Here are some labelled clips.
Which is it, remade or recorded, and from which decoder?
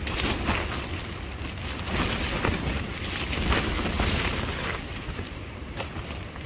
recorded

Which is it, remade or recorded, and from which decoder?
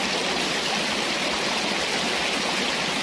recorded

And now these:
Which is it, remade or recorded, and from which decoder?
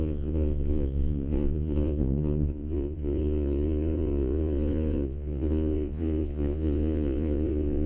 remade, vocoder, Vocos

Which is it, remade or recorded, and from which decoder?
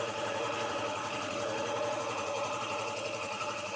remade, vocoder, Vocos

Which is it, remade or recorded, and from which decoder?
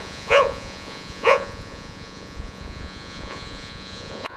remade, vocoder, Vocos